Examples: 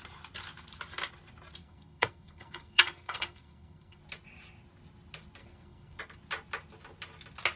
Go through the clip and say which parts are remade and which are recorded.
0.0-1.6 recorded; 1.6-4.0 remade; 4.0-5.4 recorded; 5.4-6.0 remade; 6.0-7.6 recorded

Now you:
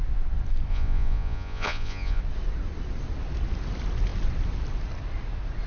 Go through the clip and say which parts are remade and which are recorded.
0.0-0.7 recorded; 0.7-2.2 remade; 2.2-5.7 recorded

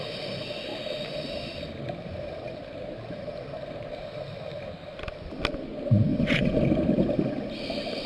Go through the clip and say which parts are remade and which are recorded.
0.0-6.1 recorded; 6.1-6.6 remade; 6.6-8.1 recorded

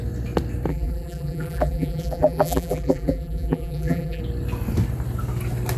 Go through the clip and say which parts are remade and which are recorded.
0.0-0.7 recorded; 0.7-4.2 remade; 4.2-5.8 recorded

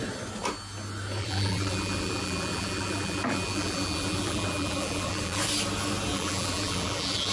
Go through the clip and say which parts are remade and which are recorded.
0.0-1.2 recorded; 1.2-5.4 remade; 5.4-6.1 recorded; 6.1-7.3 remade

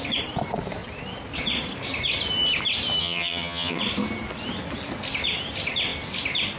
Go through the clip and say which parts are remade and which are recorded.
0.0-3.0 recorded; 3.0-3.8 remade; 3.8-6.6 recorded

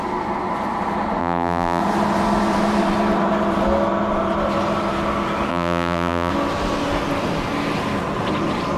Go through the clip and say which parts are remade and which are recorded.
0.0-1.2 recorded; 1.2-1.8 remade; 1.8-5.5 recorded; 5.5-6.3 remade; 6.3-8.8 recorded